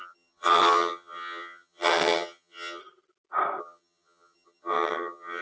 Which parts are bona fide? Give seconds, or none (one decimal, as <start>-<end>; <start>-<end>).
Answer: 2.8-3.6